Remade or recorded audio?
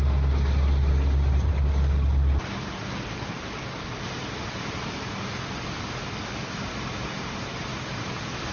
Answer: recorded